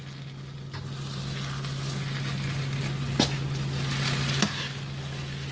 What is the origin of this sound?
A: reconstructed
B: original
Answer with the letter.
B